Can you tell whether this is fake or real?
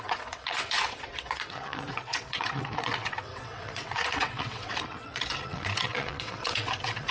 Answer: fake